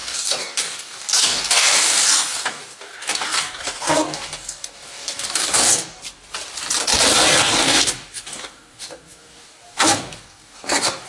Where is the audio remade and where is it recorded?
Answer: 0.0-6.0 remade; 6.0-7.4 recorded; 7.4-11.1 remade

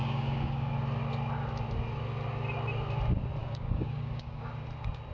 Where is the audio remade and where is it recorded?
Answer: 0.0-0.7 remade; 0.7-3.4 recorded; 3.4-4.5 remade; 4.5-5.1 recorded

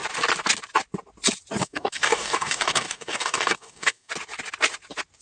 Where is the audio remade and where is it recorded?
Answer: 0.0-1.6 recorded; 1.6-4.1 remade; 4.1-5.2 recorded

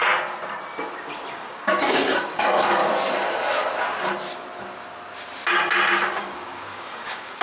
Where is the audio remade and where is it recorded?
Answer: 0.0-1.3 recorded; 1.3-2.8 remade; 2.8-6.2 recorded; 6.2-7.4 remade